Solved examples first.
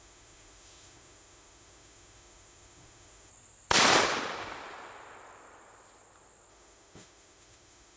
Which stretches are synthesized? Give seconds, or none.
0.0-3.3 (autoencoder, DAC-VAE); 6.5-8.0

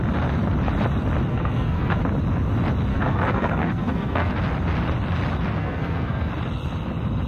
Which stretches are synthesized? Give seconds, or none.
1.3-2.0 (codec, SNAC); 2.9-4.3; 5.6-6.3